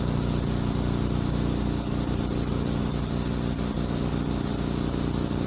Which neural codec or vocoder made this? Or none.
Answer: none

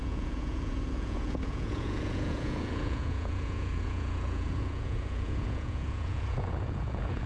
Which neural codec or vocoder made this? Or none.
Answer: vocoder, Vocos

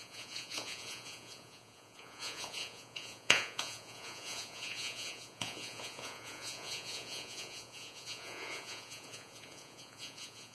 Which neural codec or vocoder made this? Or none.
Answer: vocoder, Vocos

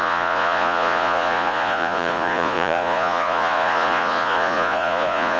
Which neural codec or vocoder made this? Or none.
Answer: vocoder, Vocos